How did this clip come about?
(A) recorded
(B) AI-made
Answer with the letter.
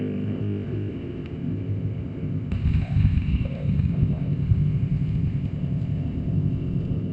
B